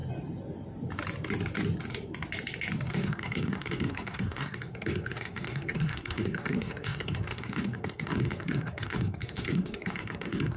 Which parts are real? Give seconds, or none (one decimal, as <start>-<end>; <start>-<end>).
0.0-2.9